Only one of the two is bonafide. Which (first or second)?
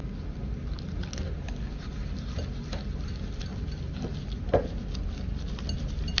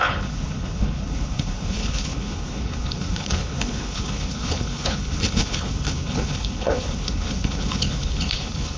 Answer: first